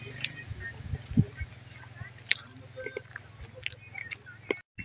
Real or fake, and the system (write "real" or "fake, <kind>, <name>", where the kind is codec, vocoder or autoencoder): real